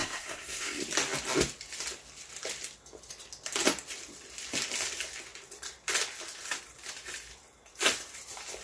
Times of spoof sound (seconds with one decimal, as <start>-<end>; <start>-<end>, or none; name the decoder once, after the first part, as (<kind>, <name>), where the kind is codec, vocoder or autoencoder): 0.0-0.8 (codec, SNAC)